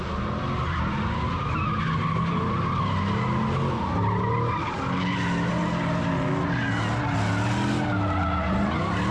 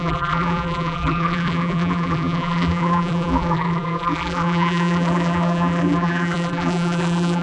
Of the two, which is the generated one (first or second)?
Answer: second